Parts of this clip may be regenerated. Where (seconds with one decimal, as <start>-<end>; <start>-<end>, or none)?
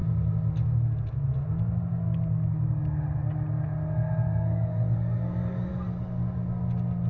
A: 4.2-5.7